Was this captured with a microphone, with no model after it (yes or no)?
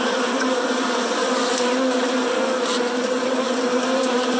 no